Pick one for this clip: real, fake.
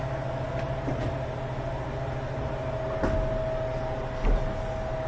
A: real